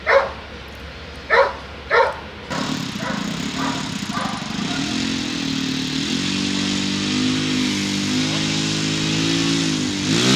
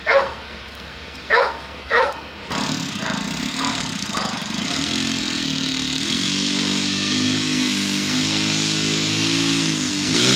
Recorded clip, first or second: first